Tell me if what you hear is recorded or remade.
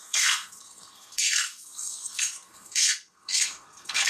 remade